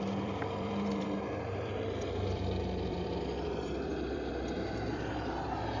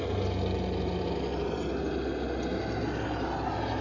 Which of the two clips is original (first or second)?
second